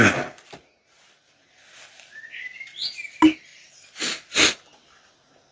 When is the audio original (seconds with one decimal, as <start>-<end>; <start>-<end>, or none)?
0.0-5.5

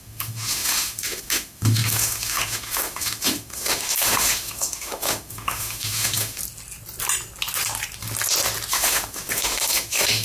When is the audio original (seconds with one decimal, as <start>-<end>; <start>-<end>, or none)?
6.4-8.7

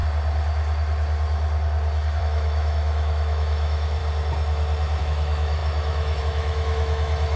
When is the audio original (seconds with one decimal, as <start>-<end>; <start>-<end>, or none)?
0.0-2.2; 4.0-5.0